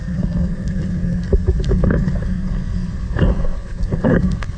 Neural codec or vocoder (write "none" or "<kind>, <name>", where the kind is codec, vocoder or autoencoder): codec, SNAC